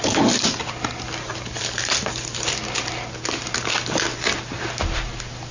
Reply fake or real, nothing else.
real